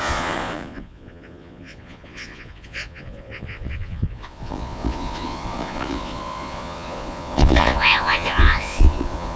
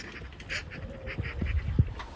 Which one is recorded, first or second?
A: second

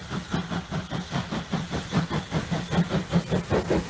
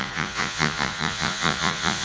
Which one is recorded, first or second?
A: first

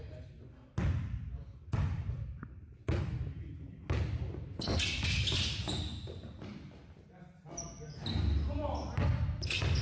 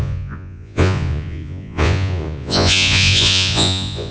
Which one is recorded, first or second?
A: first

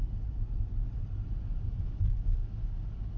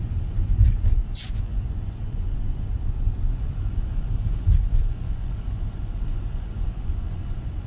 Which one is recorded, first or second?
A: first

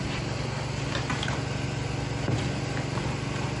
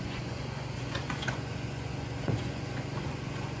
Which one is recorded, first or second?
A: first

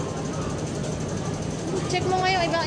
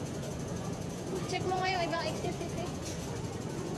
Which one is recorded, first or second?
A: first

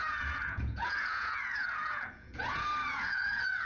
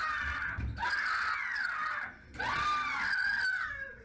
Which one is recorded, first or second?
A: second